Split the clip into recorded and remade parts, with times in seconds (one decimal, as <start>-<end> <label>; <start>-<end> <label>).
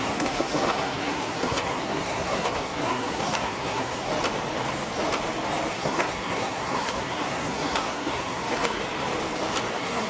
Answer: 0.0-4.1 remade; 4.1-5.7 recorded; 5.7-8.8 remade; 8.8-9.7 recorded; 9.7-10.1 remade